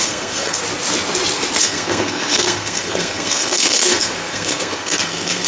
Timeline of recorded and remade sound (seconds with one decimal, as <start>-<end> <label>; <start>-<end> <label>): 0.0-0.6 remade; 0.6-1.6 recorded; 1.6-5.5 remade